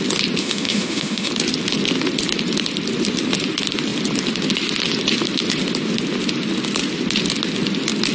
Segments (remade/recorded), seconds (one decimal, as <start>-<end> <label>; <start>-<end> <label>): 0.0-0.4 recorded; 0.4-1.3 remade; 1.3-8.1 recorded